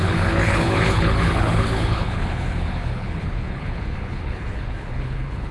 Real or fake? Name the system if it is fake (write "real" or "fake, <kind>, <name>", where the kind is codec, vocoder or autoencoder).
fake, codec, HILCodec